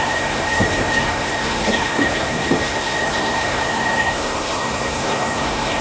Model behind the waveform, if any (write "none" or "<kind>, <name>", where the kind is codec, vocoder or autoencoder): codec, SNAC